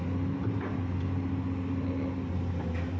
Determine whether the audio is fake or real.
real